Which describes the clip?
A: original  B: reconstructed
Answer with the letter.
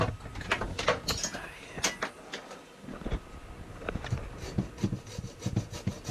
A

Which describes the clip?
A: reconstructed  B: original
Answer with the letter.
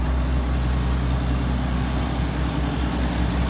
B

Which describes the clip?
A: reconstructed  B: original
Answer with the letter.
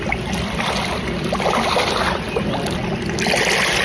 B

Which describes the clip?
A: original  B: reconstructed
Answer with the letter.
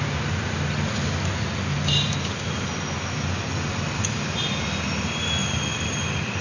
A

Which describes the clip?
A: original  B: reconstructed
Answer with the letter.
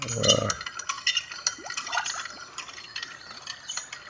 A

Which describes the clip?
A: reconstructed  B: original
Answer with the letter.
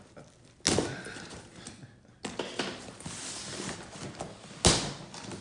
B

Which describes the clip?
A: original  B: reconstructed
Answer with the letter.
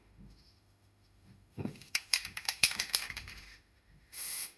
B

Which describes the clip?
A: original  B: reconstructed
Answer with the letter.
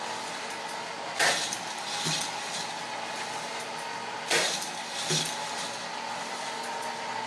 A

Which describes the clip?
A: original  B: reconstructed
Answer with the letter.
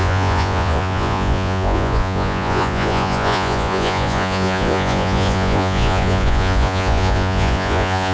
B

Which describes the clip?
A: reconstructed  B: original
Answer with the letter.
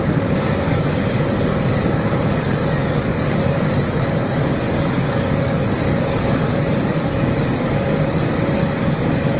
A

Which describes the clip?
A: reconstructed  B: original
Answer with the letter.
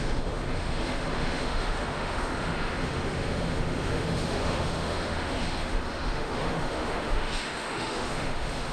A